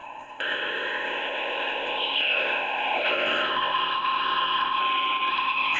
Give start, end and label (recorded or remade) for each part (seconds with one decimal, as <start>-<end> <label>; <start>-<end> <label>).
0.0-4.8 remade; 4.8-5.3 recorded; 5.3-5.8 remade